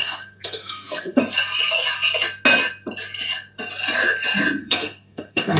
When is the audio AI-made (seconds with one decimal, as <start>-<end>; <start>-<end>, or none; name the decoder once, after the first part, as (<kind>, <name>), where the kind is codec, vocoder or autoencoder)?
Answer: 0.0-1.2 (codec, SNAC); 4.6-5.6